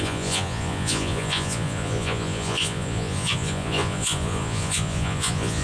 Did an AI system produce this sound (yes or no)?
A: yes